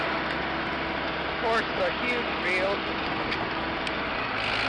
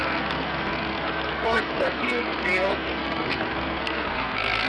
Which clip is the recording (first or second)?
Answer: first